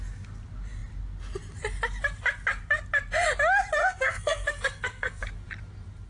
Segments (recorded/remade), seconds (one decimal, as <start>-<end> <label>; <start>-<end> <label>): 0.0-3.8 recorded; 3.8-5.2 remade; 5.2-6.1 recorded